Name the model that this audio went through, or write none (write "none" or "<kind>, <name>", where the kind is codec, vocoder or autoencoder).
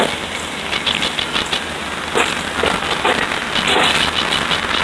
none